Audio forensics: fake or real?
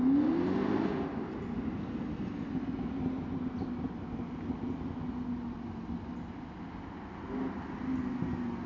real